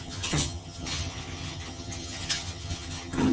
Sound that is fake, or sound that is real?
fake